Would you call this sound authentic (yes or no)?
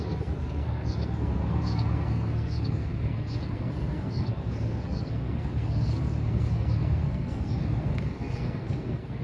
no